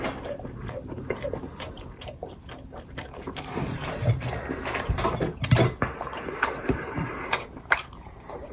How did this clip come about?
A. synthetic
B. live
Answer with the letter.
A